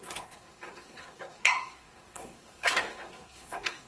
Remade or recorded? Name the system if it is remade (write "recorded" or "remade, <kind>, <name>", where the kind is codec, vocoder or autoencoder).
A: remade, codec, SNAC